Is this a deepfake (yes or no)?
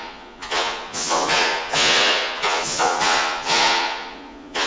yes